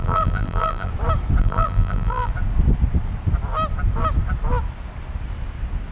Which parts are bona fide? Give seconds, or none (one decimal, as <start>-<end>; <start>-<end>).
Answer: 0.9-1.4; 2.3-5.9